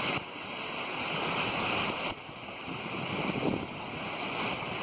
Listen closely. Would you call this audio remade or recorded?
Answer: recorded